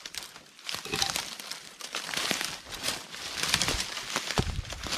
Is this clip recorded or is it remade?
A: remade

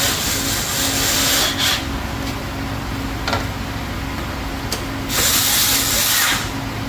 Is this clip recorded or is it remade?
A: recorded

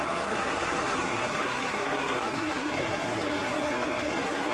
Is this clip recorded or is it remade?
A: remade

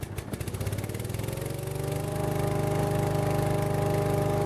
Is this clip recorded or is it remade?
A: recorded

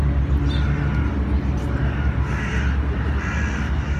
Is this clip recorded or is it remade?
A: recorded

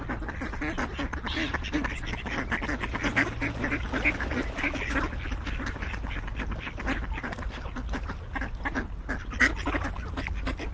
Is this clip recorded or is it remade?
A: recorded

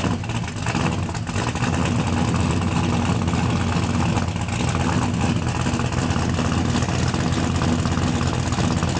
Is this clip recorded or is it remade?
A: recorded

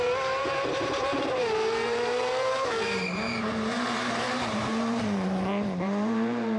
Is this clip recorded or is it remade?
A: remade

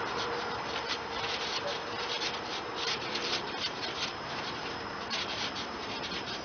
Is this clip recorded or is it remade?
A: remade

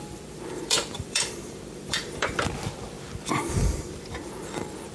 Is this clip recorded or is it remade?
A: remade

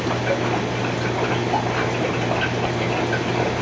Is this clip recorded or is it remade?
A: recorded